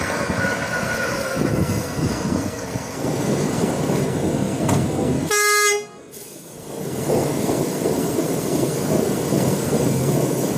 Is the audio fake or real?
fake